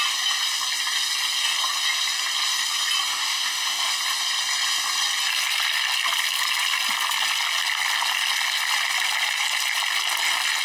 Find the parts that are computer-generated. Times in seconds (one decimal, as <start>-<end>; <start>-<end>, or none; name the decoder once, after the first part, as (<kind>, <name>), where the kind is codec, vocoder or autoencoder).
3.1-3.9 (autoencoder, DAC-VAE)